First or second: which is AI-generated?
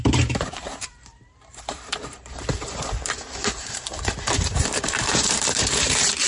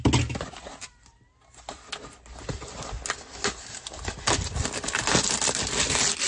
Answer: first